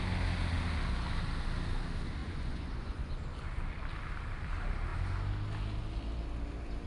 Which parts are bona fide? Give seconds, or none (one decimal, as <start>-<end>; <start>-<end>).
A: 0.0-2.2; 3.1-6.9